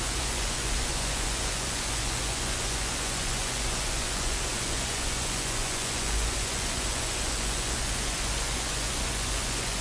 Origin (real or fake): fake